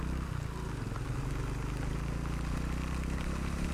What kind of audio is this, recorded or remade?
recorded